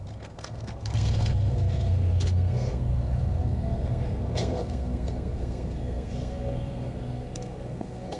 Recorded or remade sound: remade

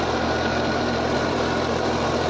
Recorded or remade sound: remade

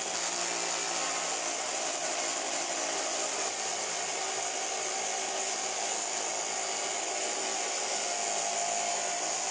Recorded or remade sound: recorded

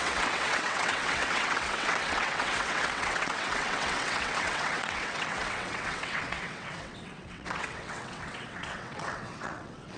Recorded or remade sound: remade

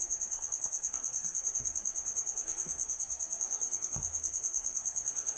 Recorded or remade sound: remade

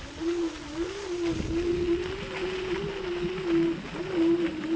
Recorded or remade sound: recorded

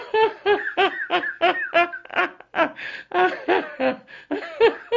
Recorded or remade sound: recorded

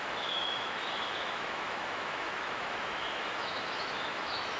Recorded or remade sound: remade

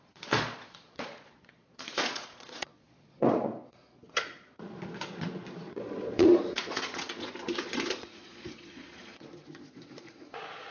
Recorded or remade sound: remade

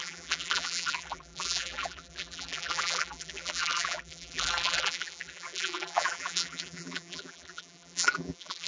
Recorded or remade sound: remade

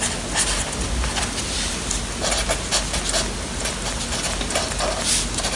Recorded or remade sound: recorded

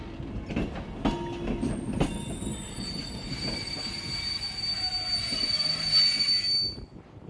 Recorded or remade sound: recorded